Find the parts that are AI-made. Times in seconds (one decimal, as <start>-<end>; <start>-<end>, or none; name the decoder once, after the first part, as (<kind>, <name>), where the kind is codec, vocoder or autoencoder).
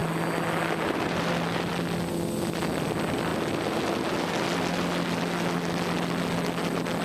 none